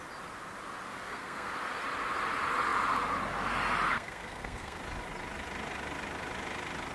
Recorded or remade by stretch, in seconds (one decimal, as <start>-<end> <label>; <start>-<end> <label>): 0.0-0.9 recorded; 0.9-1.5 remade; 1.5-3.9 recorded; 3.9-4.8 remade; 4.8-6.9 recorded